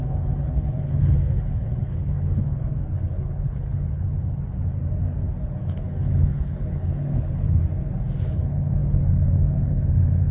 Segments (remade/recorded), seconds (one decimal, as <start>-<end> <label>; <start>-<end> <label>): 0.0-4.8 remade; 4.8-5.6 recorded; 5.6-7.6 remade; 7.6-8.2 recorded; 8.2-10.3 remade